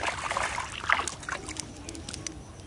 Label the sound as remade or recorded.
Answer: recorded